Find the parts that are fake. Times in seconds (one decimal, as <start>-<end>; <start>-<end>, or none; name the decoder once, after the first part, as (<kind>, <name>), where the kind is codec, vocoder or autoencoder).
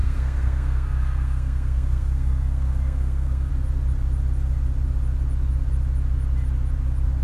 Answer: 0.0-3.5 (codec, SNAC)